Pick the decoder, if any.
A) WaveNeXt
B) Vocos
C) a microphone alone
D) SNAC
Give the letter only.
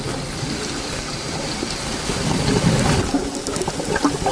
C